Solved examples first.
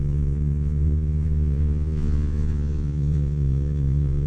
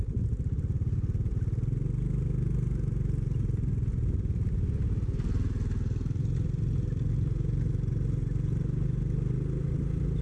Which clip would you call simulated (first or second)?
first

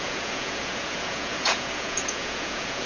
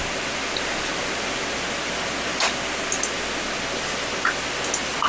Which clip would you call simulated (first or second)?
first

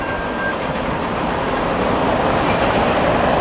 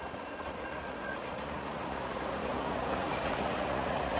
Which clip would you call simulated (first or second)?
second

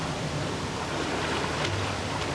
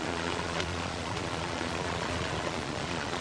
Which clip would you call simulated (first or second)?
second